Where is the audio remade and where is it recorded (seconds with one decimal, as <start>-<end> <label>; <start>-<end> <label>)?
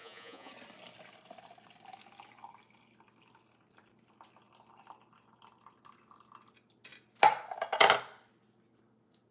0.0-0.5 remade; 0.5-9.3 recorded